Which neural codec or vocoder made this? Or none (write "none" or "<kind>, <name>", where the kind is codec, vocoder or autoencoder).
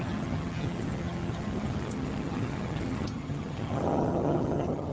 vocoder, HiFi-GAN